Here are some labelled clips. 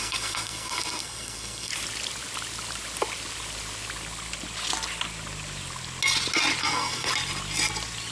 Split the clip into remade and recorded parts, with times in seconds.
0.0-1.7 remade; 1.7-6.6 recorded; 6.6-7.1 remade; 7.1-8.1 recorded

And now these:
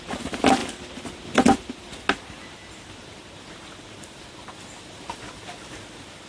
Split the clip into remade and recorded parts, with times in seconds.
0.0-6.3 recorded

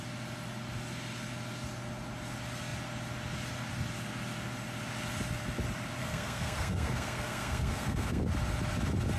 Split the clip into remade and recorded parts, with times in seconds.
0.0-6.0 recorded; 6.0-8.2 remade; 8.2-9.2 recorded

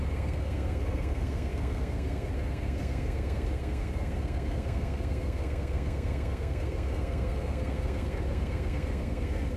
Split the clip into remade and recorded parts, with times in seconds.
0.0-9.6 remade

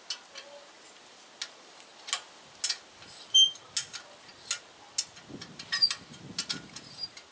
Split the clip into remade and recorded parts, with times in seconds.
0.0-7.3 recorded

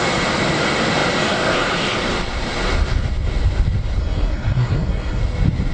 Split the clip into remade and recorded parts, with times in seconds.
0.0-4.0 recorded; 4.0-5.2 remade; 5.2-5.7 recorded

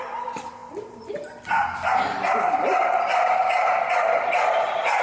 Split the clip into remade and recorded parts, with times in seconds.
0.0-5.0 recorded

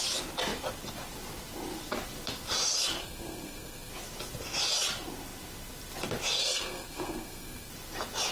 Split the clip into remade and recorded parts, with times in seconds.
0.0-3.0 recorded; 3.0-3.9 remade; 3.9-6.4 recorded; 6.4-7.7 remade; 7.7-8.3 recorded